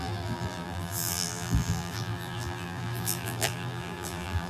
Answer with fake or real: fake